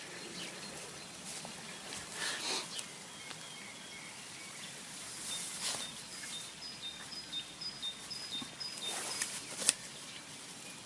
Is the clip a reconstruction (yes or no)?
no